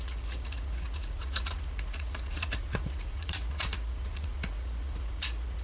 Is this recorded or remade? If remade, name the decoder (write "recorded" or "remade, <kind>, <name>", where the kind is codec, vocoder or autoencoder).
remade, vocoder, Vocos